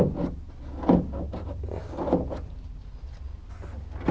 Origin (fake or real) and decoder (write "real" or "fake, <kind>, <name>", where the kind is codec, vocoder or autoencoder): real